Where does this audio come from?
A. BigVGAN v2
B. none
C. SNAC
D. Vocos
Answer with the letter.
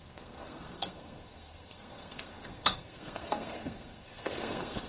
C